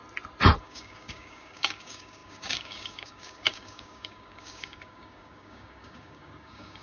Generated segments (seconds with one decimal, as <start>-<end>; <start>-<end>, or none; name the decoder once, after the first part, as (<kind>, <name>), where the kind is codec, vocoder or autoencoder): 0.6-6.8 (codec, DAC)

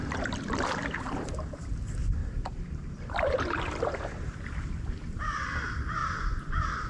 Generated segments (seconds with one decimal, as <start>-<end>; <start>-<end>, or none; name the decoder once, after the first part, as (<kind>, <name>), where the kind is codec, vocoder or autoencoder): 2.2-4.7 (vocoder, BigVGAN v2); 6.0-6.9

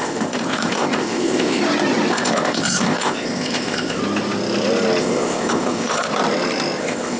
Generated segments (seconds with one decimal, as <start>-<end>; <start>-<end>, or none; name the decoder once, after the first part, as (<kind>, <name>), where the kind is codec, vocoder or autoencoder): 0.0-1.6 (codec, ZipCodec); 2.1-4.0; 5.0-6.1; 6.8-7.2